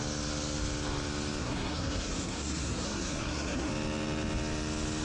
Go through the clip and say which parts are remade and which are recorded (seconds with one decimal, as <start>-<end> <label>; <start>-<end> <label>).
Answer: 0.0-1.4 recorded; 1.4-3.7 remade; 3.7-5.0 recorded